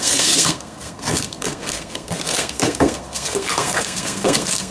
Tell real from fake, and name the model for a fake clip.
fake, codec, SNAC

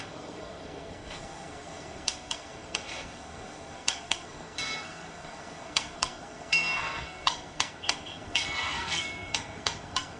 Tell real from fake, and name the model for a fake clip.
fake, codec, SNAC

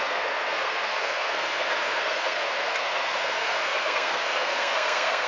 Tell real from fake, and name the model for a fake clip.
fake, codec, SNAC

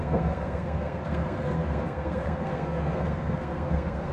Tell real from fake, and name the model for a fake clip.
fake, codec, SNAC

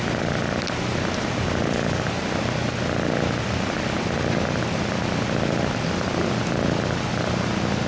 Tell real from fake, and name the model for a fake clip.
real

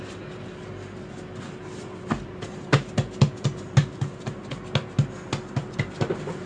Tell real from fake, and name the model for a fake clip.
real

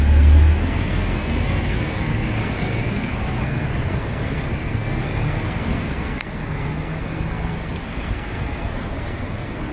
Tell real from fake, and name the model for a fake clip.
fake, codec, SNAC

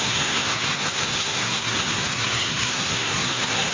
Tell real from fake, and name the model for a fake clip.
fake, codec, SNAC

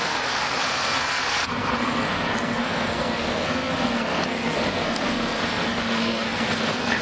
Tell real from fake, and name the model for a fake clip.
fake, codec, SNAC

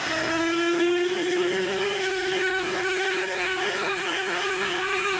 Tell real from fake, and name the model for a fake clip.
fake, codec, SNAC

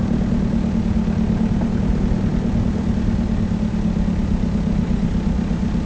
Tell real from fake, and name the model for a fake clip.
real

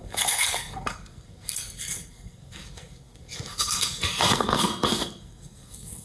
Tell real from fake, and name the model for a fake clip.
fake, codec, SNAC